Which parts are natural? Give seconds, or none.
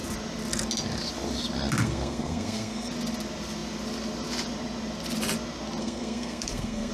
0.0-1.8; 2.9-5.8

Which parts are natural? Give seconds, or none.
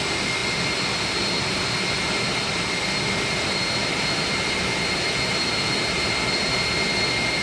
0.0-7.4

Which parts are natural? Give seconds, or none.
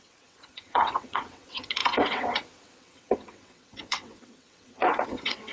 none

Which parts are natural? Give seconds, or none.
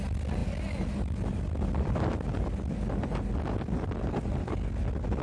0.0-5.2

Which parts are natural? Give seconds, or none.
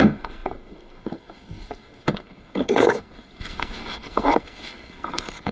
none